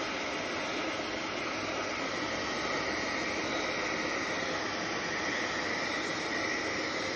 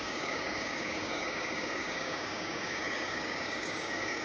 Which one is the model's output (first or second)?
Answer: second